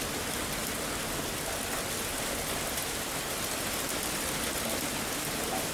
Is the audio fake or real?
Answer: real